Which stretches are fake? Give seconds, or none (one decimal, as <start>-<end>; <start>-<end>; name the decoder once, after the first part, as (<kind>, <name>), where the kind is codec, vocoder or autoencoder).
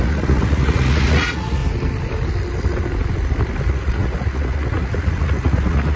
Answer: 0.0-1.6 (vocoder, Vocos); 3.7-6.0